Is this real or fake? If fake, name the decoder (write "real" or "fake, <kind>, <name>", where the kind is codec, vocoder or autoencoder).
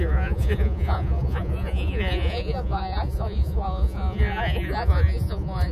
fake, vocoder, Vocos